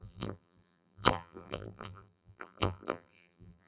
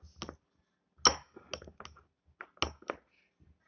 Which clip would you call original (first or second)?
second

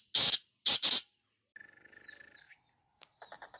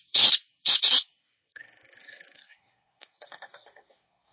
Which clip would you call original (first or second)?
first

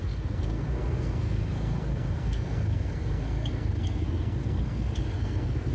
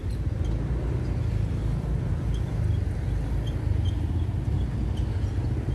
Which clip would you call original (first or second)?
second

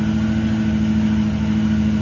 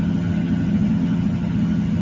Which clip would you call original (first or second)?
first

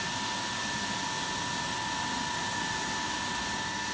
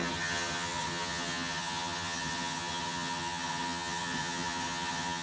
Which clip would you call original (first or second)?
first